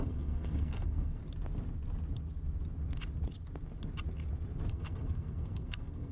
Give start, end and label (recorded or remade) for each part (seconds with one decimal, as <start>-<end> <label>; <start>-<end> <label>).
0.0-1.2 remade; 1.2-4.7 recorded; 4.7-6.1 remade